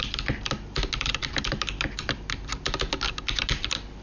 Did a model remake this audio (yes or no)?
no